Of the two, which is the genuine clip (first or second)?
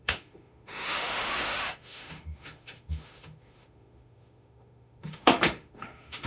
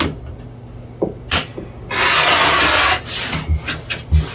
second